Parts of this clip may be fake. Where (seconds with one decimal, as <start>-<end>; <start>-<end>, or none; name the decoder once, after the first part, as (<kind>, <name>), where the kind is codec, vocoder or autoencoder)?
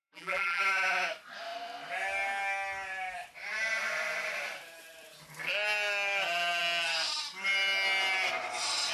0.0-0.6 (vocoder, BigVGAN v2)